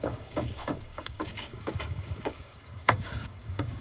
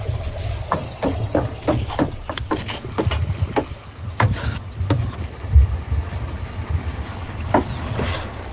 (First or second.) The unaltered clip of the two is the second